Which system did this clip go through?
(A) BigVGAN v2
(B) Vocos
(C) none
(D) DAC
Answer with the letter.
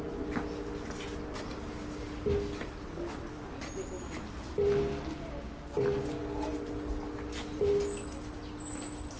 C